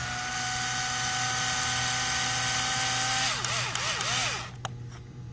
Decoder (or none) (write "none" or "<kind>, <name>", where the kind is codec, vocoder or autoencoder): none